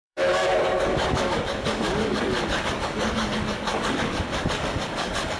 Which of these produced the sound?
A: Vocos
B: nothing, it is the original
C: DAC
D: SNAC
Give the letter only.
C